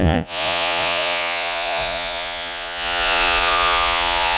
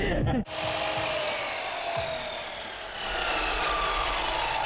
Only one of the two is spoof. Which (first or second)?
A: first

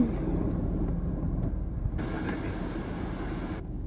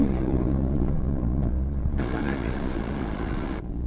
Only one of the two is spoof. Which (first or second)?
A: second